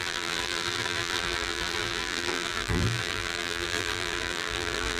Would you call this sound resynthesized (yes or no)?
yes